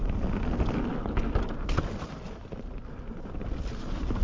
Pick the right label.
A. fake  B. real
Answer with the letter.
B